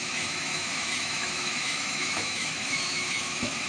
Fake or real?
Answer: fake